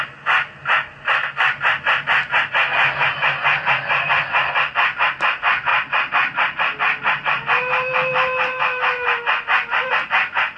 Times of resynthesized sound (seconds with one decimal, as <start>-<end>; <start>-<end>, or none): 5.7-9.9